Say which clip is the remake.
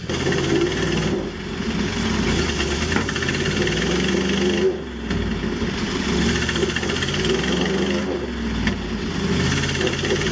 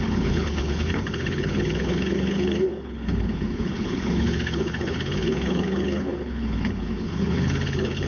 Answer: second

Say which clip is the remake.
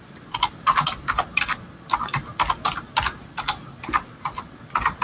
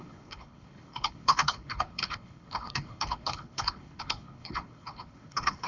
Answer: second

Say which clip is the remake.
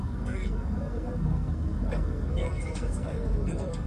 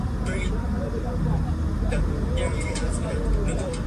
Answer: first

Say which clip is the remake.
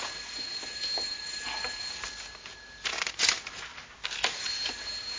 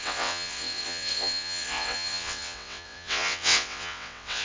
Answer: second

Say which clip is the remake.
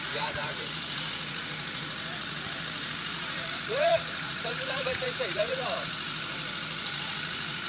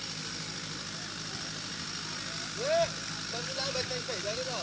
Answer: first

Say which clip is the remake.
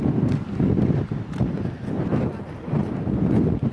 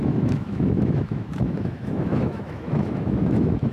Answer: second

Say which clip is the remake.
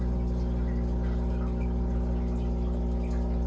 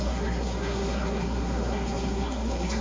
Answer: second